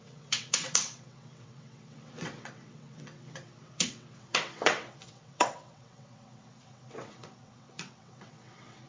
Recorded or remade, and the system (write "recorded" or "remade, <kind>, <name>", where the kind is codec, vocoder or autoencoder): remade, vocoder, WaveNeXt